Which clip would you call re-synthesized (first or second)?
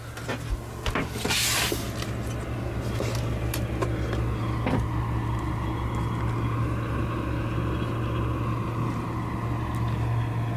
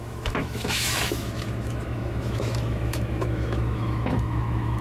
second